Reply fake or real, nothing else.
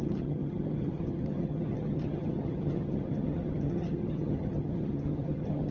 fake